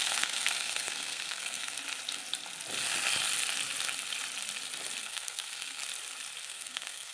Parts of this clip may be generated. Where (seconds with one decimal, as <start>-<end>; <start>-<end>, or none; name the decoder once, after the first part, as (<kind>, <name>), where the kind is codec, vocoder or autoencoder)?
0.0-1.8 (codec, SNAC); 5.0-5.8; 6.4-7.1